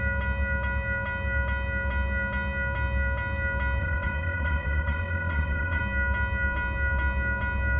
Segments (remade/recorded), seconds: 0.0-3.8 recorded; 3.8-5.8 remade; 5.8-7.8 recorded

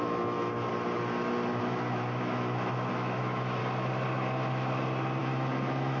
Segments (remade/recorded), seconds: 0.0-0.7 remade; 0.7-1.6 recorded; 1.6-3.6 remade; 3.6-5.2 recorded; 5.2-6.0 remade

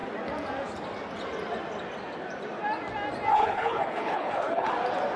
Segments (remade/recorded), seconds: 0.0-3.3 recorded; 3.3-4.7 remade; 4.7-5.2 recorded

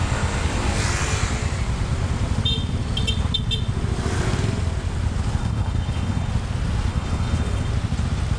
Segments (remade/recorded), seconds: 0.0-5.4 recorded; 5.4-6.3 remade; 6.3-6.9 recorded; 6.9-7.7 remade; 7.7-8.4 recorded

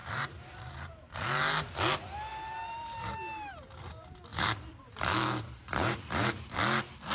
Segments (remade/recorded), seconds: 0.0-1.1 remade; 1.1-2.3 recorded; 2.3-3.9 remade; 3.9-4.3 recorded; 4.3-6.6 remade; 6.6-7.1 recorded

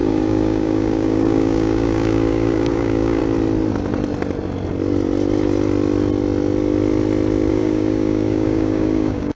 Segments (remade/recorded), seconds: 0.0-3.2 remade; 3.2-7.5 recorded; 7.5-9.3 remade

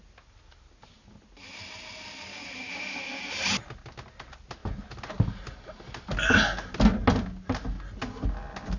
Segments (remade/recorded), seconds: 0.0-8.8 recorded